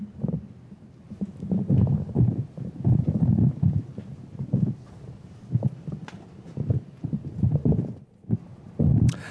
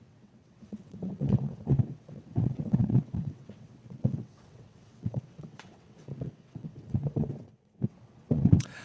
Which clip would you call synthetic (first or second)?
second